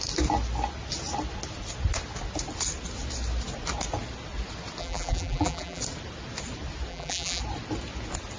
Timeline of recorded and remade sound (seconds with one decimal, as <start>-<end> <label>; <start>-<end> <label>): 0.0-4.8 recorded; 4.8-5.8 remade; 5.8-6.9 recorded; 6.9-7.4 remade; 7.4-8.4 recorded